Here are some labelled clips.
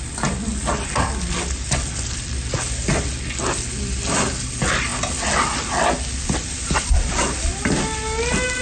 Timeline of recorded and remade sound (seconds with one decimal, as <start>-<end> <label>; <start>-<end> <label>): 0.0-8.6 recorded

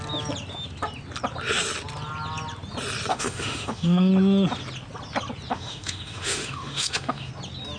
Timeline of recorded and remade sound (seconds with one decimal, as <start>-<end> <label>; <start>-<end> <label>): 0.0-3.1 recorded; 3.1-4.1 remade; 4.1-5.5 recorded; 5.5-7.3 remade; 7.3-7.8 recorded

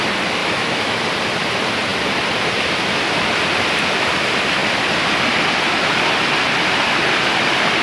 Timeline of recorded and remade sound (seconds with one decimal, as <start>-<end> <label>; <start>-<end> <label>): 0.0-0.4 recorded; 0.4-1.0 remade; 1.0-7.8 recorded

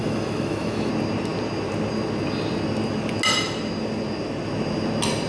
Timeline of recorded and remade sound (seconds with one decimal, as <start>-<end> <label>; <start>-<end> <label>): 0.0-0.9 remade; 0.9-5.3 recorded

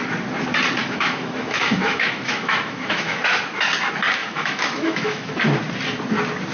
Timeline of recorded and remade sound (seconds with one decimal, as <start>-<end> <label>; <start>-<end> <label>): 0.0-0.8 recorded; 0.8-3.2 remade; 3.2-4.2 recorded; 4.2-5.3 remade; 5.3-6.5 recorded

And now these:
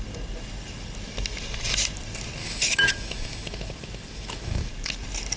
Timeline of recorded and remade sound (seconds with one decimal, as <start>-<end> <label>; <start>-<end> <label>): 0.0-2.4 recorded; 2.4-4.7 remade; 4.7-5.4 recorded